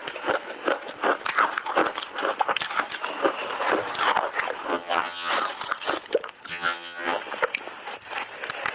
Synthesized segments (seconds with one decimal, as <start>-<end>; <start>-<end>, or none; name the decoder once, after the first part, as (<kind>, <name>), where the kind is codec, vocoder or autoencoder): 4.7-5.3 (vocoder, HiFi-GAN); 6.5-7.2